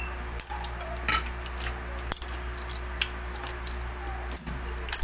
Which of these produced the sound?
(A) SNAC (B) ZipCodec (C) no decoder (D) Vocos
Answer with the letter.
C